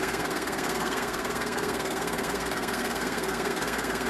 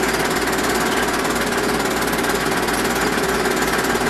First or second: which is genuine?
second